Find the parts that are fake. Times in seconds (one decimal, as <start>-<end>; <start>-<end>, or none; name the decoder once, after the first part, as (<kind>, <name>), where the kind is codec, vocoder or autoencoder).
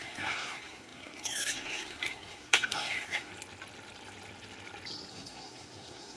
0.0-3.3 (codec, SNAC); 5.1-6.2